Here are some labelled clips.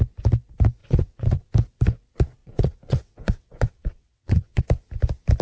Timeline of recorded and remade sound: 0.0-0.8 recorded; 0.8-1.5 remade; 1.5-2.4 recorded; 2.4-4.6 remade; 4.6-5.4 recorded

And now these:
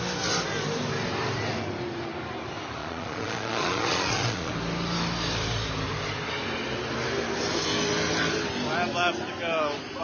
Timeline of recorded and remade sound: 0.0-2.8 recorded; 2.8-4.5 remade; 4.5-10.0 recorded

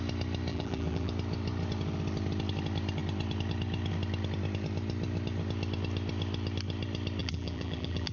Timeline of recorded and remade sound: 0.0-0.5 recorded; 0.5-1.1 remade; 1.1-7.2 recorded; 7.2-8.1 remade

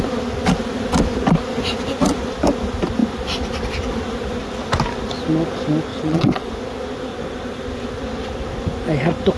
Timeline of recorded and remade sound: 0.0-5.9 recorded; 5.9-6.5 remade; 6.5-9.4 recorded

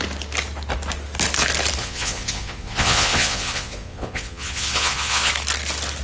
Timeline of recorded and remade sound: 0.0-1.8 recorded; 1.8-5.3 remade; 5.3-6.0 recorded

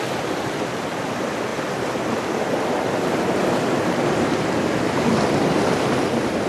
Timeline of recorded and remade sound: 0.0-6.5 recorded

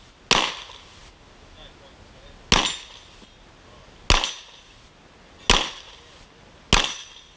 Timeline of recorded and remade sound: 0.0-7.4 recorded